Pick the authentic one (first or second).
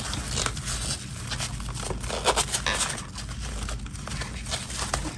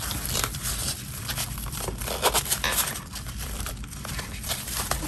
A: first